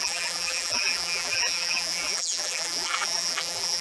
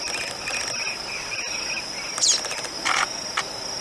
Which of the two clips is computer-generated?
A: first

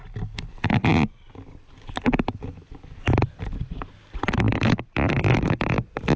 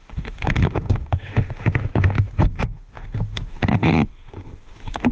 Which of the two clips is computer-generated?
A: second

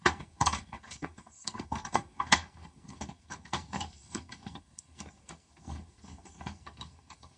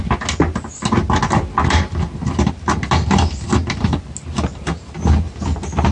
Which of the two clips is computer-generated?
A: first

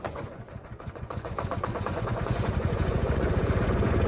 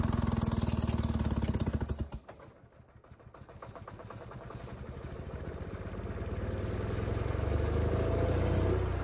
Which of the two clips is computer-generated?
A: first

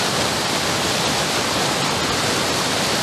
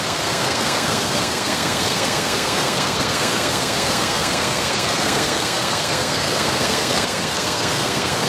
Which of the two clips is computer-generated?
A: second